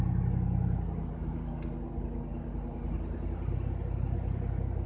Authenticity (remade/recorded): recorded